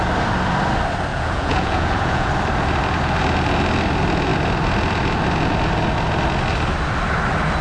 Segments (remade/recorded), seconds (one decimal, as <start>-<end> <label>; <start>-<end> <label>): 0.0-1.1 recorded; 1.1-2.3 remade; 2.3-7.6 recorded